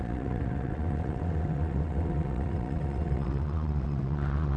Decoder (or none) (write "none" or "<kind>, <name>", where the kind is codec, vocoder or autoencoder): vocoder, WaveNeXt